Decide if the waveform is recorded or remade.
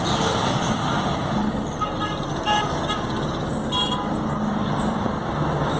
recorded